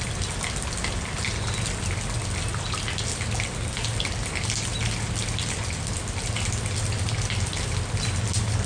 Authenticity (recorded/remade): recorded